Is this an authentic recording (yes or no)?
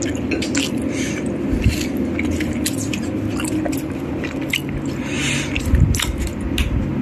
yes